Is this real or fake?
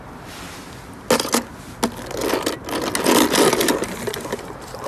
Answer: real